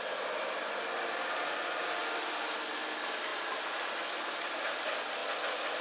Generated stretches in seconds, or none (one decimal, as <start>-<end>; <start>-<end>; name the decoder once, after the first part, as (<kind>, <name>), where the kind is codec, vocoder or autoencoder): none